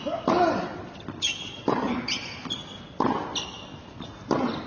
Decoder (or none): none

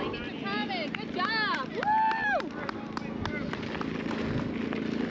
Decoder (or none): none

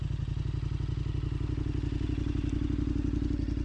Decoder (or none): none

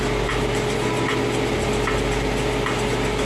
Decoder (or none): none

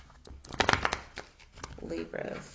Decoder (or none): none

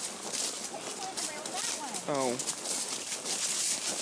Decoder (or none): none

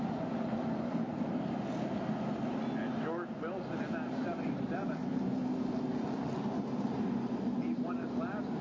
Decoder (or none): none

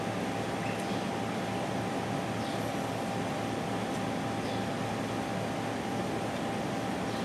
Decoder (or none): none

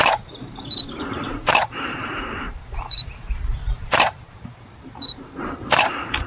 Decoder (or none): vocoder, BigVGAN v2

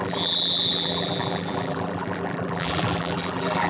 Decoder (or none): vocoder, BigVGAN v2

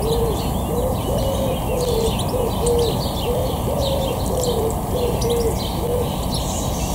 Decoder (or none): none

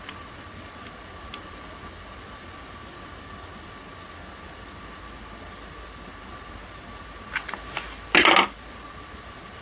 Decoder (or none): none